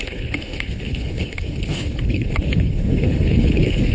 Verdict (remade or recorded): remade